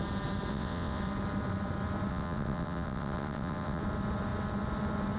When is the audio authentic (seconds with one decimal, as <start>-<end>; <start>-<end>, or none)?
0.0-0.5; 1.0-2.1; 3.8-5.2